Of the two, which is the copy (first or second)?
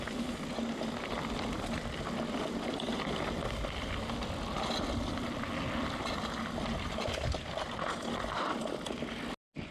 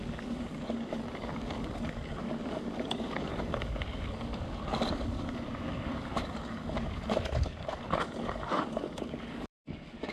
second